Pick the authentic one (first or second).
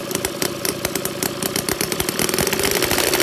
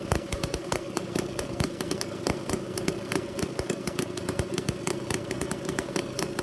first